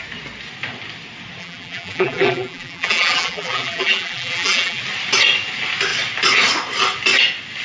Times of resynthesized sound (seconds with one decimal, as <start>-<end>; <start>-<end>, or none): 1.4-4.8